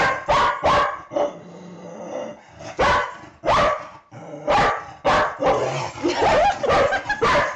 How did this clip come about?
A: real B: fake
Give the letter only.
A